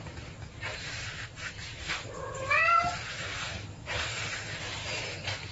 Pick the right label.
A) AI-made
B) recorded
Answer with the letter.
B